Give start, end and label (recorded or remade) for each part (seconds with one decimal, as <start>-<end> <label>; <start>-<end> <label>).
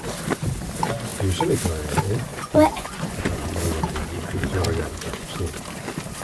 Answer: 0.0-2.3 recorded; 2.3-3.6 remade; 3.6-4.8 recorded; 4.8-5.3 remade; 5.3-6.2 recorded